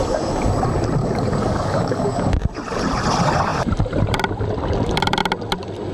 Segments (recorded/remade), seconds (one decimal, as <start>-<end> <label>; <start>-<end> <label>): 0.0-1.0 recorded; 1.0-2.4 remade; 2.4-5.9 recorded